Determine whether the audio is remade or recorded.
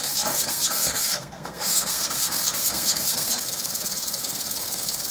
remade